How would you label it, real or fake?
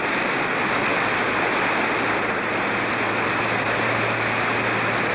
real